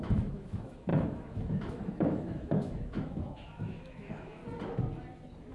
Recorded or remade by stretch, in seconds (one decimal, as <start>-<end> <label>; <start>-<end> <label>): 0.0-4.4 remade; 4.4-5.5 recorded